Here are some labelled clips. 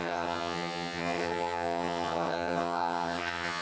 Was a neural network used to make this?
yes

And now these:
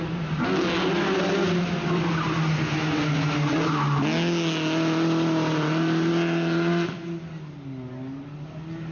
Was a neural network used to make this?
no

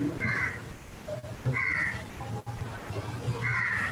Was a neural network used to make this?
no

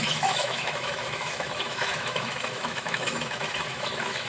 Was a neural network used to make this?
yes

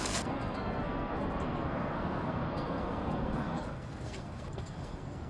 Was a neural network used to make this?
yes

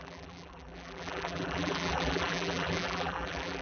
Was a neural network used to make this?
yes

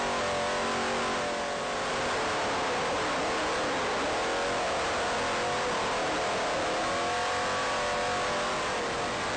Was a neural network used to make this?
no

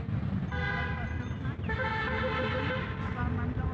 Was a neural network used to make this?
no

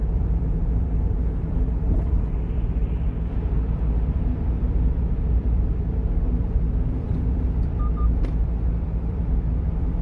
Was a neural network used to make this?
yes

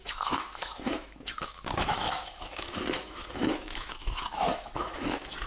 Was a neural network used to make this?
yes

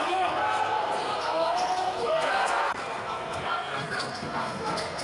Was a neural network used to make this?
yes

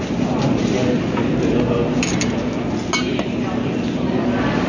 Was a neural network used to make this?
no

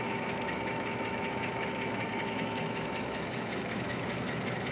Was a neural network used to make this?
yes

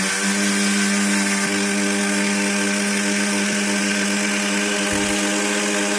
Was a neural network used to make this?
no